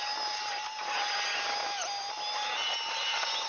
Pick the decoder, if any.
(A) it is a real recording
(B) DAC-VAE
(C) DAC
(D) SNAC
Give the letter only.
A